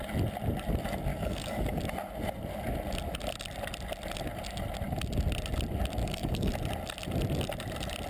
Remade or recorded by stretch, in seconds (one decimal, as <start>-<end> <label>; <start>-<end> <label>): 0.0-1.1 recorded; 1.1-1.8 remade; 1.8-6.0 recorded; 6.0-6.5 remade; 6.5-8.1 recorded